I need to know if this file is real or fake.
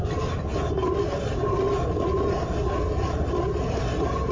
real